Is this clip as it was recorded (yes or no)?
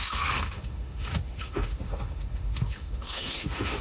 no